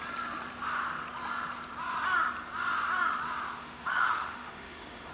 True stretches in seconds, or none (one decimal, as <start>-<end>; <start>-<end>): 0.0-3.6